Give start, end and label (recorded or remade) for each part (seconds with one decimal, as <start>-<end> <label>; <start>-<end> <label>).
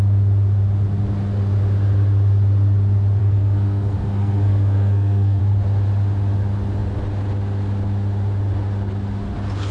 0.0-3.2 recorded; 3.2-5.4 remade; 5.4-9.7 recorded